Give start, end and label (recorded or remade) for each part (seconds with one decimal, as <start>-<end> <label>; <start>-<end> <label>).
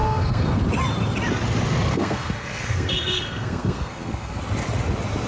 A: 0.0-0.6 remade; 0.6-1.9 recorded; 1.9-4.4 remade; 4.4-5.3 recorded